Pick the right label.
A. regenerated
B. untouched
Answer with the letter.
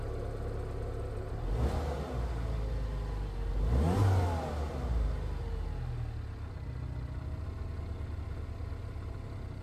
B